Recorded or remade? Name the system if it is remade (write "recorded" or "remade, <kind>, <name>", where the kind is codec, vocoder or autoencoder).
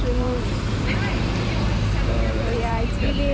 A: remade, vocoder, BigVGAN v2